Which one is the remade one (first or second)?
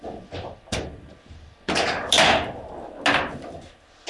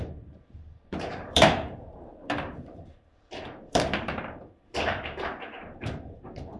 second